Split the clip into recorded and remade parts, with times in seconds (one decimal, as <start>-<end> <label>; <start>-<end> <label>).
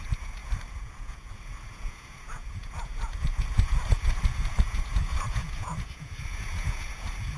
0.0-7.4 remade